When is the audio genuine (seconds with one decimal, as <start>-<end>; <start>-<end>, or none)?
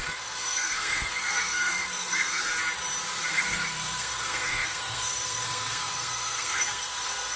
2.5-3.3